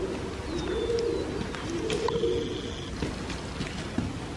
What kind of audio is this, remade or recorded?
recorded